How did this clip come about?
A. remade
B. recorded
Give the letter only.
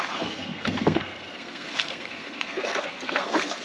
A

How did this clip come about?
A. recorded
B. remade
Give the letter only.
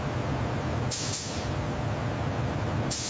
A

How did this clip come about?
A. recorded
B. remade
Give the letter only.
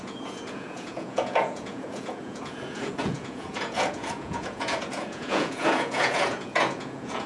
B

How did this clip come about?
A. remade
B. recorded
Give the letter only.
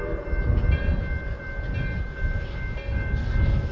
B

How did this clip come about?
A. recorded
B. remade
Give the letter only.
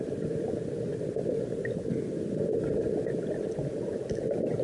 A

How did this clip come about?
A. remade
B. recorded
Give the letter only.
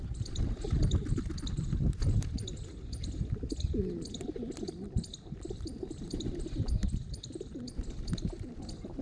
B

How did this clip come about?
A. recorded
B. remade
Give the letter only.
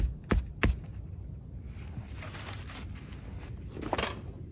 A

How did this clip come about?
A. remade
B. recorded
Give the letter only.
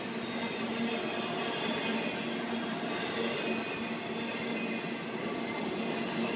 B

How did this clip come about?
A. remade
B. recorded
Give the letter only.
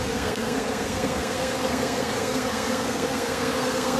A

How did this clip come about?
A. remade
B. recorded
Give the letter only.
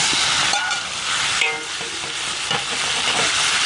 B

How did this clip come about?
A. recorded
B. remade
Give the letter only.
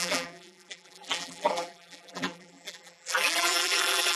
B